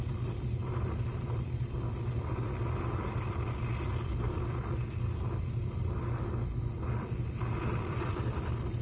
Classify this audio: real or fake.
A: real